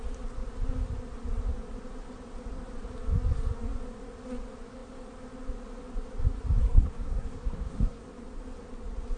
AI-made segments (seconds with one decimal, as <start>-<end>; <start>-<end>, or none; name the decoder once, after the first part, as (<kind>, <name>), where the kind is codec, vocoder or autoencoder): 6.6-8.0 (codec, SNAC)